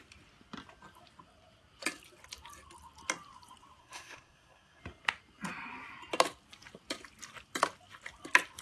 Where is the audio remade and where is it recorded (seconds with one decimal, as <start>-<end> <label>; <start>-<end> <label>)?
0.0-3.8 recorded; 3.8-4.8 remade; 4.8-8.6 recorded